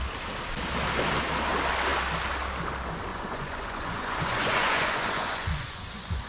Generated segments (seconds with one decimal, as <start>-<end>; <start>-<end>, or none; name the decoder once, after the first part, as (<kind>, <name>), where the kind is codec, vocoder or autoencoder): 3.1-6.3 (vocoder, Vocos)